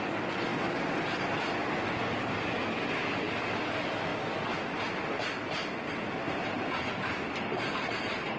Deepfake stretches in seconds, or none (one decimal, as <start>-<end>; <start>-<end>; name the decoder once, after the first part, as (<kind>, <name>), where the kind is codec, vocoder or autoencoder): none